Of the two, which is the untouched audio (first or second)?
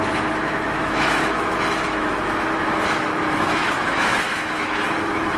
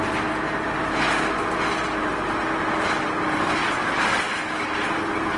second